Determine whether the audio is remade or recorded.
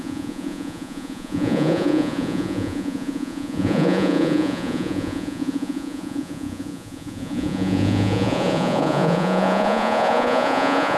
remade